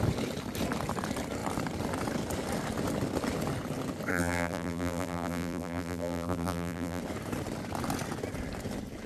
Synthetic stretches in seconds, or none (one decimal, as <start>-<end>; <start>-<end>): 4.1-7.0